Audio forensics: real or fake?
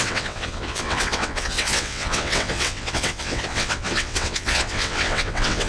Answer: fake